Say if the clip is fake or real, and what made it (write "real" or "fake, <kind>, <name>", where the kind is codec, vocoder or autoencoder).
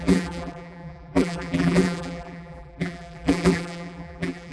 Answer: fake, vocoder, BigVGAN v2